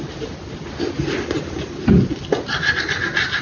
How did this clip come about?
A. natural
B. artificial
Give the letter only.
A